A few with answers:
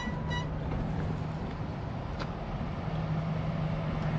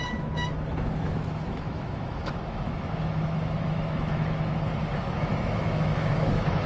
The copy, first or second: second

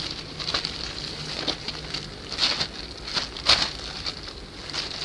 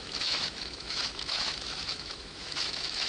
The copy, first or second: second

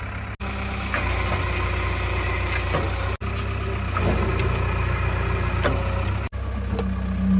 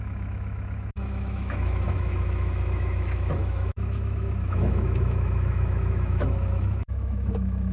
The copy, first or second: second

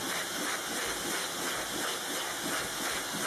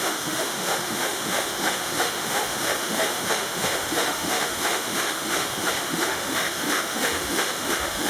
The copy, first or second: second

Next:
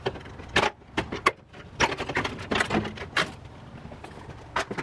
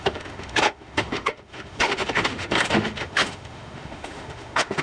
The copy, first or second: second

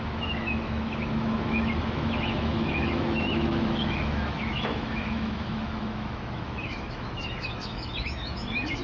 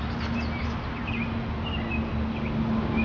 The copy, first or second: first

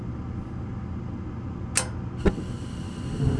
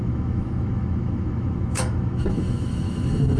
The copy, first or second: second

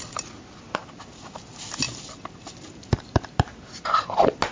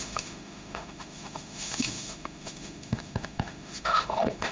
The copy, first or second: second